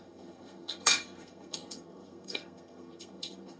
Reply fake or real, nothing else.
fake